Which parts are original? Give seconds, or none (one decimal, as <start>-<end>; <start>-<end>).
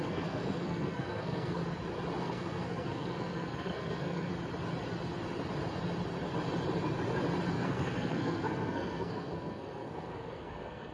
1.6-2.2; 4.3-7.5